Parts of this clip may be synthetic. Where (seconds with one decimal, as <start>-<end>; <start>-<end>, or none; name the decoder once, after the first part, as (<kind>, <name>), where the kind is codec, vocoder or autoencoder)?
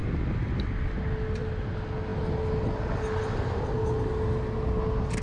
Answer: none